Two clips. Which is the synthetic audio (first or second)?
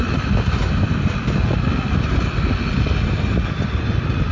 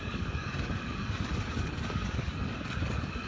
second